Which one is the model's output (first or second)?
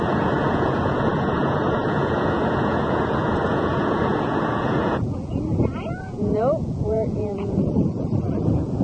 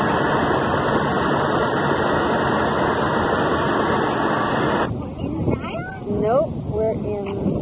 first